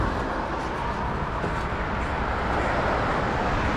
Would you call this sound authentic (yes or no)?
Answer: yes